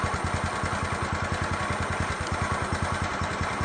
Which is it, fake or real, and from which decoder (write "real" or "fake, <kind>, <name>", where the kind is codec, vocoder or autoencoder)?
real